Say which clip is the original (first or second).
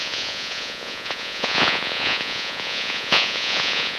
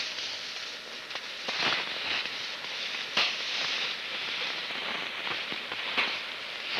second